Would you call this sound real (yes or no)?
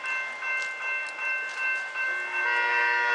yes